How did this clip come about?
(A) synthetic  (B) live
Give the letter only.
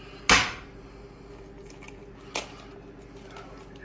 B